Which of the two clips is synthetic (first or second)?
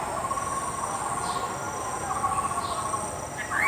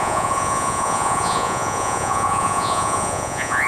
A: second